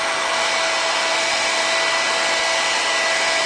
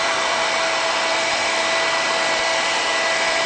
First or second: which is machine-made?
second